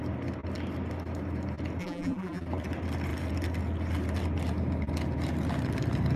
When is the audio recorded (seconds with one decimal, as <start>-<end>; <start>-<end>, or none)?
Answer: 0.0-1.8; 2.4-6.2

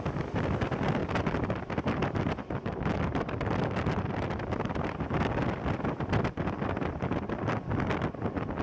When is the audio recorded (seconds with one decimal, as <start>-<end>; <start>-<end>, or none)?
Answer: none